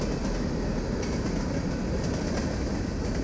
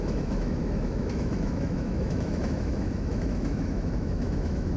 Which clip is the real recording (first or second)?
first